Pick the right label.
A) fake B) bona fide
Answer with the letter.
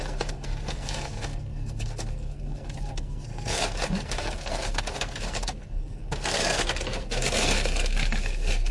A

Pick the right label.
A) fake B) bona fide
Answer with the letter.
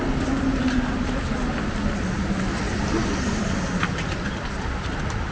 B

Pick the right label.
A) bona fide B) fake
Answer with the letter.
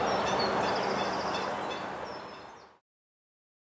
A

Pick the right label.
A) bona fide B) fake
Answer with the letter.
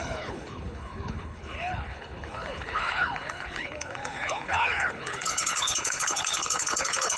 B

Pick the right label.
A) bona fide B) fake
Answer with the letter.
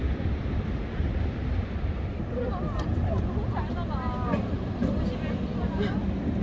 A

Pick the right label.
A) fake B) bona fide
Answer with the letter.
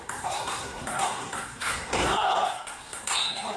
A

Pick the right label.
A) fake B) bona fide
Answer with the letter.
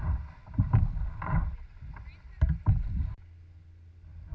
B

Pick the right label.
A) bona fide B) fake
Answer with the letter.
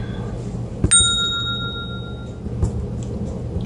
A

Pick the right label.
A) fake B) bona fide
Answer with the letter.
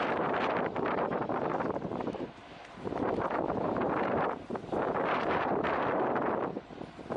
A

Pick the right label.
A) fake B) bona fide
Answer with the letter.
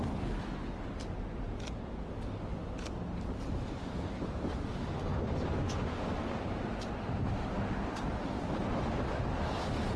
B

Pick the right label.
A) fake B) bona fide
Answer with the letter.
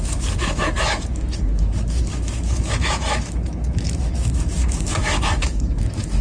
A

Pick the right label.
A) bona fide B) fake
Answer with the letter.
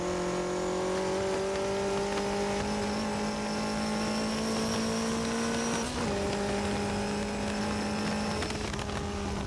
A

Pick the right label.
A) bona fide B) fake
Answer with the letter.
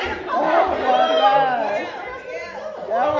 A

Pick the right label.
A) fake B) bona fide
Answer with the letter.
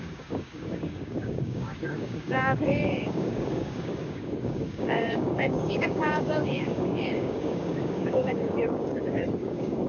A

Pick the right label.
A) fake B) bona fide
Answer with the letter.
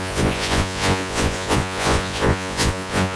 A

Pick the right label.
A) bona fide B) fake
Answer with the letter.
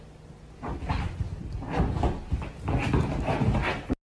A